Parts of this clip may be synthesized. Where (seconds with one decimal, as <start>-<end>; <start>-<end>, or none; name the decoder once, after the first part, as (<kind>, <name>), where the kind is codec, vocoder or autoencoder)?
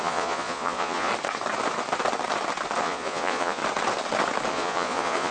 0.0-1.1 (vocoder, Vocos); 2.8-3.6; 4.5-5.3